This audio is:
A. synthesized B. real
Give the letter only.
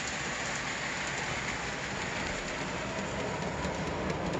B